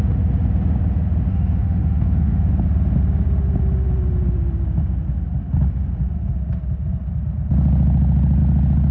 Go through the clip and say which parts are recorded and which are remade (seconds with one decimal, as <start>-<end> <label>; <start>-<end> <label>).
0.0-1.3 recorded; 1.3-2.5 remade; 2.5-8.9 recorded